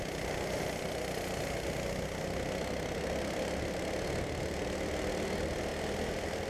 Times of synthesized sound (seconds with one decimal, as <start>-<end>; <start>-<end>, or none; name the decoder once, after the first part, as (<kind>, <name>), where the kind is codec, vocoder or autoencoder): none